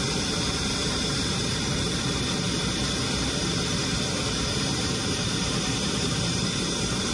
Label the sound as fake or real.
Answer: fake